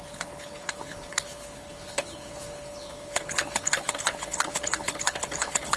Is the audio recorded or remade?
remade